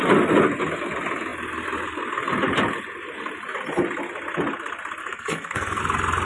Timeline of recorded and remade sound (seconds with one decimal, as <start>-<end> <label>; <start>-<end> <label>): 0.0-5.0 recorded; 5.0-5.8 remade; 5.8-6.3 recorded